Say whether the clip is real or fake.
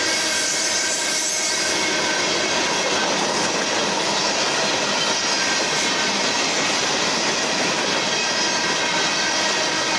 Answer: real